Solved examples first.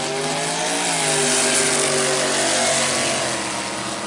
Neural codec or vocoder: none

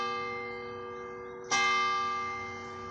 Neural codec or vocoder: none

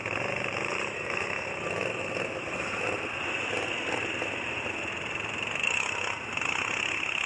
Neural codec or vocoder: none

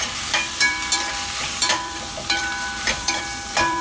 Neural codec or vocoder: vocoder, BigVGAN v2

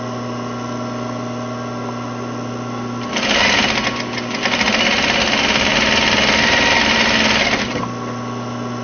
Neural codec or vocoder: none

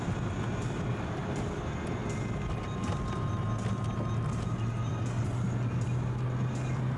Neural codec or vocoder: none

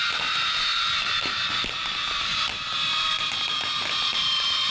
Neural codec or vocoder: vocoder, BigVGAN v2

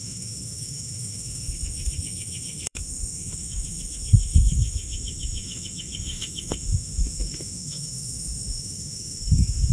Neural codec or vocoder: autoencoder, DAC-VAE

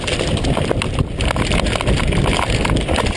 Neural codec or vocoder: none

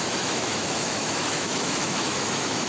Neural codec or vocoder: autoencoder, DAC-VAE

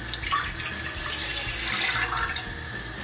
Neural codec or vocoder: none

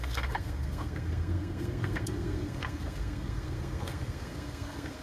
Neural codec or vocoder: codec, SNAC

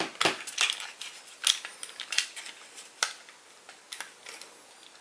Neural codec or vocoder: none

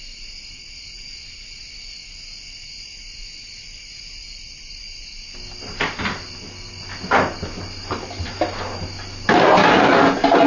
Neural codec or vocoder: none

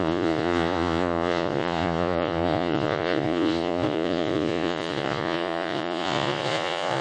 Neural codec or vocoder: vocoder, Vocos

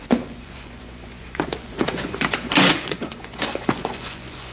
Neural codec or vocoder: vocoder, Vocos